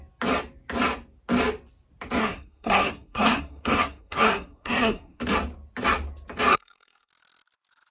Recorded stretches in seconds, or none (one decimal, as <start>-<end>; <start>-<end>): 0.0-2.2; 5.2-6.5; 7.1-7.9